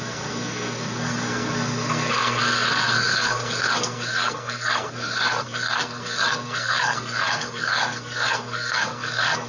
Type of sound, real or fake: fake